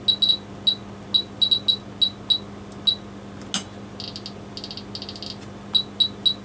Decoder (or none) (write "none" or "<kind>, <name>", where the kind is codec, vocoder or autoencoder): none